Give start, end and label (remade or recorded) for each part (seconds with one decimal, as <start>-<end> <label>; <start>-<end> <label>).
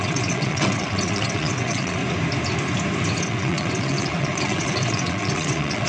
0.0-2.0 remade; 2.0-3.2 recorded; 3.2-5.9 remade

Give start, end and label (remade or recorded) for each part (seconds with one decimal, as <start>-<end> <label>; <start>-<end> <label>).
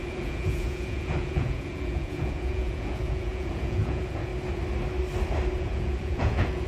0.0-4.3 remade; 4.3-5.6 recorded; 5.6-6.7 remade